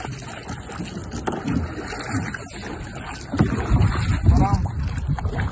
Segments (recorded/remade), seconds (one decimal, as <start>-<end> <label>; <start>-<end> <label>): 0.0-5.5 recorded